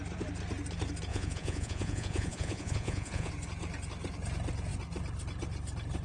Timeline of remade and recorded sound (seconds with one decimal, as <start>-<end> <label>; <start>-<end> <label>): 0.0-1.1 recorded; 1.1-3.3 remade; 3.3-6.0 recorded